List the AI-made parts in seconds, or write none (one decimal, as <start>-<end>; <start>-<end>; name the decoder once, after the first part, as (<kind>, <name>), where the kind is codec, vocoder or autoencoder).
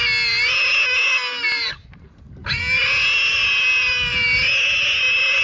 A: none